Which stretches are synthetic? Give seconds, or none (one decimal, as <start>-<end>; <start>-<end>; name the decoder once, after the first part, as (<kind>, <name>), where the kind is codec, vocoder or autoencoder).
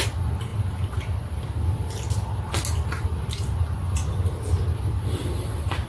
none